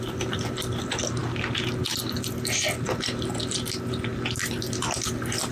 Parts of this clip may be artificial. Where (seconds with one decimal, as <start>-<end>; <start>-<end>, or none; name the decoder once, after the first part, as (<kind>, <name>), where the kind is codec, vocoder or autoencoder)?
none